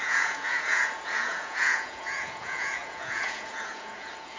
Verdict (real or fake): fake